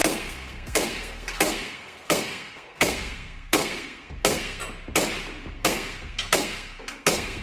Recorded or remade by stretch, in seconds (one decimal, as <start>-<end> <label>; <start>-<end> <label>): 0.0-4.6 remade; 4.6-5.5 recorded; 5.5-7.4 remade